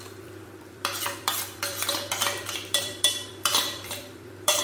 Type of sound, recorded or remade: remade